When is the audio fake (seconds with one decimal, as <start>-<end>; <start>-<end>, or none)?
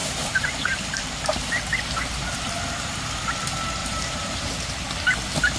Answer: 0.0-1.7; 3.8-4.5